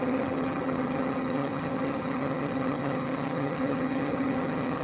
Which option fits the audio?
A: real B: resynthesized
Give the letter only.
B